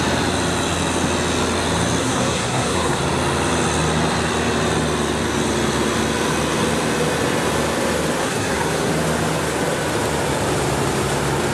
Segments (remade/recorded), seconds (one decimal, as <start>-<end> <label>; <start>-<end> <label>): 0.0-2.0 recorded; 2.0-3.0 remade; 3.0-8.2 recorded; 8.2-8.9 remade; 8.9-11.5 recorded